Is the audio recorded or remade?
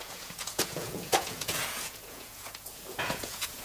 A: remade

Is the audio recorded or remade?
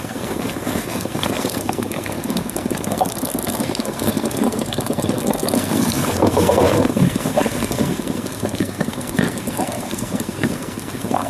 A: remade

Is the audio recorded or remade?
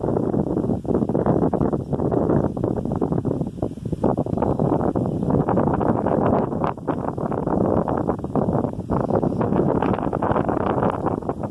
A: recorded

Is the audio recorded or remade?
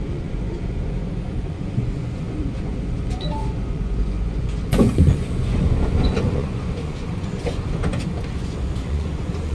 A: remade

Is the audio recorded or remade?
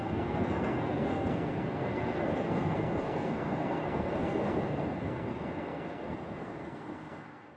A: remade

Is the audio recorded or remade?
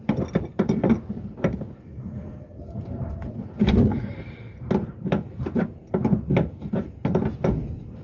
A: recorded